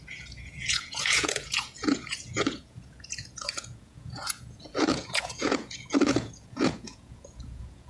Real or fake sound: fake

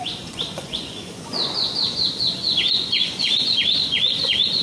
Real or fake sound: fake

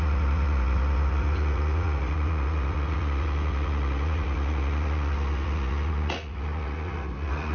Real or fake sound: fake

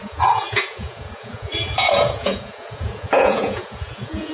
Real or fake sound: fake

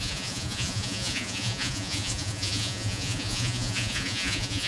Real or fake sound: fake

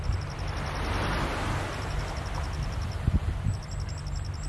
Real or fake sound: real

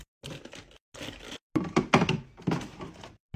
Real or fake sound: real